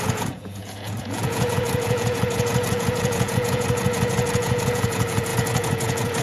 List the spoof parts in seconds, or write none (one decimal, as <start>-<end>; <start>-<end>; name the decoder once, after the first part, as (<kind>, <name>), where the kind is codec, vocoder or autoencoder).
0.0-6.2 (vocoder, Vocos)